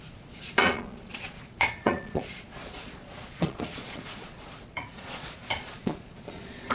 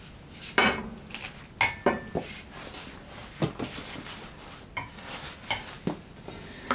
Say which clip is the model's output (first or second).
first